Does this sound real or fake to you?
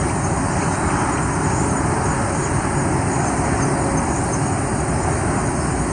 real